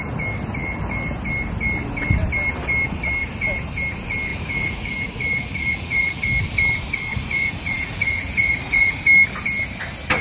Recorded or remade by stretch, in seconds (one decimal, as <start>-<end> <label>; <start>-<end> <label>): 0.0-4.3 recorded; 4.3-6.2 remade; 6.2-7.1 recorded; 7.1-9.0 remade; 9.0-10.2 recorded